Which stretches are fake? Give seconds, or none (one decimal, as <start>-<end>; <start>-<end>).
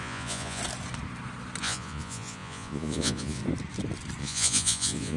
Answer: 0.0-0.6; 1.6-3.4; 4.2-5.2